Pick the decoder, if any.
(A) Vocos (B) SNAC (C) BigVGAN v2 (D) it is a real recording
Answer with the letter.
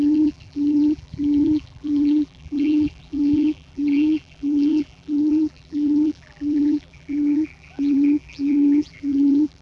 C